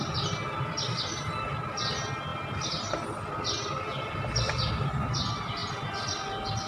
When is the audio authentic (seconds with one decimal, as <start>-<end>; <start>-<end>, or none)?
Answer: 0.0-2.3; 4.7-6.7